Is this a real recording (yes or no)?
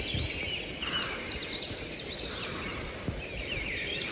yes